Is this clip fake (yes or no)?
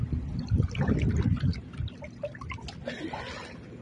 no